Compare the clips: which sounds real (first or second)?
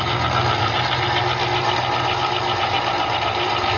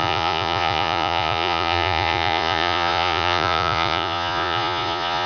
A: first